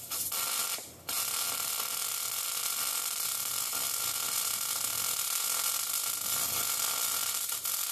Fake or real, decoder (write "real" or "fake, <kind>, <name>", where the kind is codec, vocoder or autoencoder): real